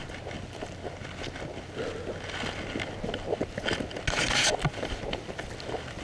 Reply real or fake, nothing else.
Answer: real